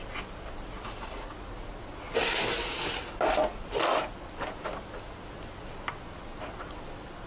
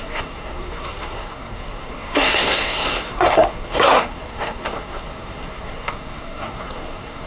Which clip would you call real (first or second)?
first